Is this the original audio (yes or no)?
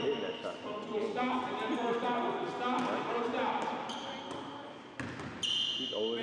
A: yes